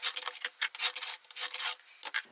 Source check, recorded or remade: recorded